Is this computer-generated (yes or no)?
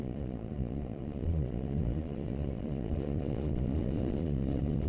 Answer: yes